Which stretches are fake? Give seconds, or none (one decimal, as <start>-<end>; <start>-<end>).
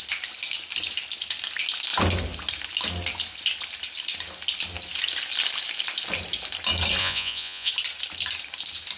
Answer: 7.0-7.7